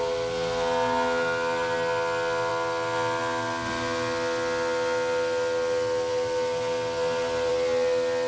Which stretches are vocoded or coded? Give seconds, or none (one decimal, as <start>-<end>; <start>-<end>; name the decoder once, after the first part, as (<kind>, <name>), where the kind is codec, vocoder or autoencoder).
none